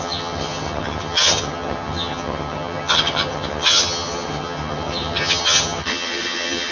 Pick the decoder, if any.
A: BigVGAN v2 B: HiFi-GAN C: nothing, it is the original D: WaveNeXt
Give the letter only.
B